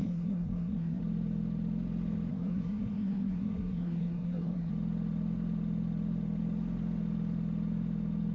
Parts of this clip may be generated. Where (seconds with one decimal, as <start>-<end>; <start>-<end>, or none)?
0.0-1.0; 2.3-4.7